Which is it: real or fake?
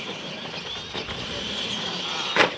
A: real